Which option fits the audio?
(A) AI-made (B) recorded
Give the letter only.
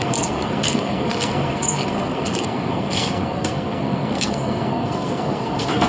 A